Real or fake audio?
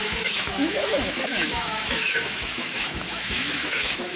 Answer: fake